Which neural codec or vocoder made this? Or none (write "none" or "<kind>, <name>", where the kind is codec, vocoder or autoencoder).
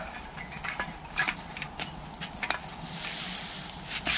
none